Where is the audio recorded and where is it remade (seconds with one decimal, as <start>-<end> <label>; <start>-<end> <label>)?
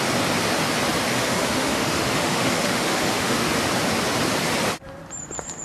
0.0-1.1 recorded; 1.1-3.5 remade; 3.5-5.6 recorded